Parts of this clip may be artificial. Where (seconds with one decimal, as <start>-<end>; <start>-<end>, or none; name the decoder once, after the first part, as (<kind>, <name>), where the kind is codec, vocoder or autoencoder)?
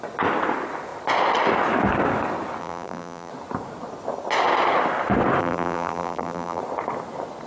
2.6-3.3 (vocoder, BigVGAN v2); 5.4-6.6